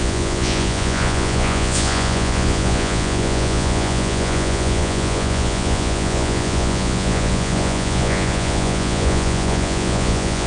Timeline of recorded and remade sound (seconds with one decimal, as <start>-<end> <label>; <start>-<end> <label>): 0.0-10.5 remade

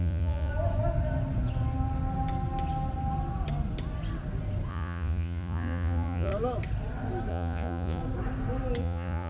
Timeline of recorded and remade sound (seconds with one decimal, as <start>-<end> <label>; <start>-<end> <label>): 0.0-0.5 remade; 0.5-4.7 recorded; 4.7-6.3 remade; 6.3-7.3 recorded; 7.3-8.0 remade; 8.0-8.8 recorded; 8.8-9.3 remade

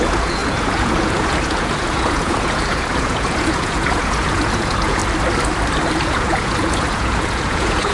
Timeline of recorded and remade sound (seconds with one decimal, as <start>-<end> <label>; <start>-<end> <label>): 0.0-5.0 remade; 5.0-5.9 recorded; 5.9-7.9 remade

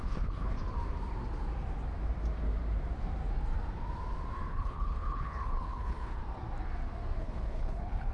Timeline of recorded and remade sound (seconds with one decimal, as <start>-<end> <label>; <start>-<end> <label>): 0.0-0.6 remade; 0.6-4.5 recorded; 4.5-6.2 remade; 6.2-7.2 recorded; 7.2-8.1 remade

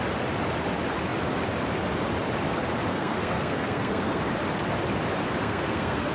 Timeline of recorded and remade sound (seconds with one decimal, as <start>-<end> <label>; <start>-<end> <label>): 0.0-2.9 recorded; 2.9-4.2 remade; 4.2-5.4 recorded; 5.4-6.1 remade

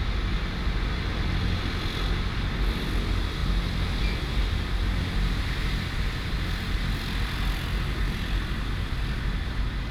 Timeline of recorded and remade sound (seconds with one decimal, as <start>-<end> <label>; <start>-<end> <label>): 0.0-9.9 recorded